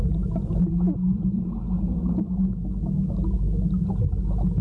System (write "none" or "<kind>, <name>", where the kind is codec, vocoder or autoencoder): none